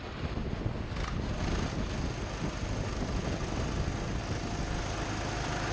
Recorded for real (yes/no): yes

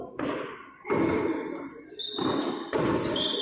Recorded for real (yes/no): yes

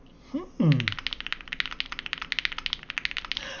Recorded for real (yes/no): yes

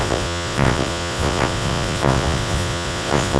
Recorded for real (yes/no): no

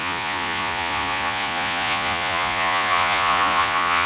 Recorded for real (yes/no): no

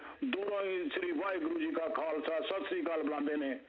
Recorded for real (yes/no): yes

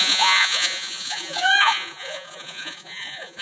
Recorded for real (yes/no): no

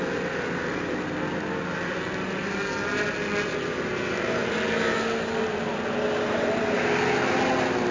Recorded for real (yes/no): yes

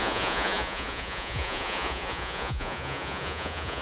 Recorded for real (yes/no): no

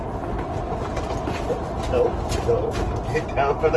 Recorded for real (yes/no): yes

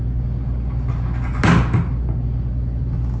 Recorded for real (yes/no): yes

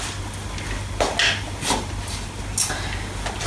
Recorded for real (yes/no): yes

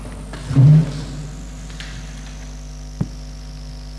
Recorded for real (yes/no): yes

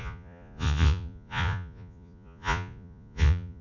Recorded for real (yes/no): no